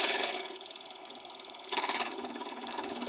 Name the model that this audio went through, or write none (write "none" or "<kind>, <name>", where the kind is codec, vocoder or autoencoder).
codec, HILCodec